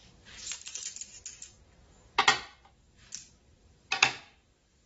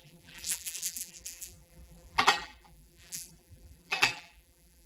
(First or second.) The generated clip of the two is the second